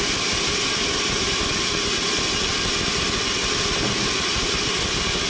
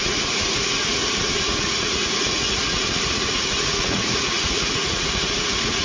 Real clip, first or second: first